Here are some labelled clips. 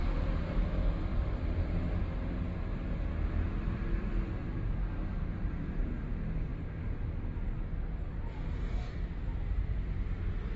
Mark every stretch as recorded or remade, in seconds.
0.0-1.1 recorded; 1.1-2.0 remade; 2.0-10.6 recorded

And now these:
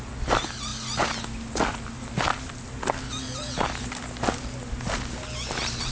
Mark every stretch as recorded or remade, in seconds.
0.0-5.9 recorded

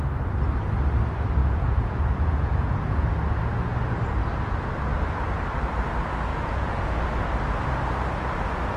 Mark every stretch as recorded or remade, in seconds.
0.0-1.4 recorded; 1.4-3.1 remade; 3.1-6.3 recorded; 6.3-7.0 remade; 7.0-8.8 recorded

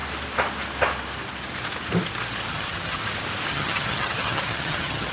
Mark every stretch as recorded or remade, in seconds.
0.0-2.5 recorded; 2.5-3.0 remade; 3.0-3.5 recorded; 3.5-5.1 remade

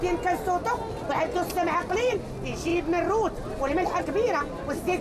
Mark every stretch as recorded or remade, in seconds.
0.0-5.0 recorded

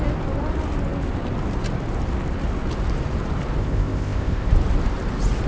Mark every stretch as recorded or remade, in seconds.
0.0-3.6 recorded; 3.6-4.5 remade; 4.5-5.5 recorded

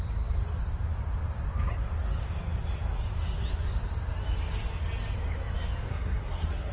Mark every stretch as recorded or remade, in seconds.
0.0-5.9 recorded; 5.9-6.7 remade